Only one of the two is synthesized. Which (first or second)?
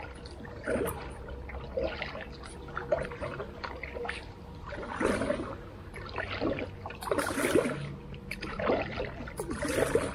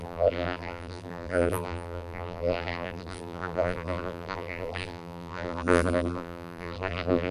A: second